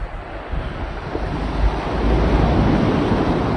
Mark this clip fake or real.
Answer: real